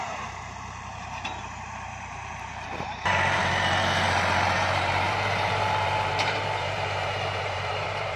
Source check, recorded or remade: remade